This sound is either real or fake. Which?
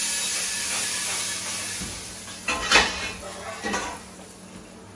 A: real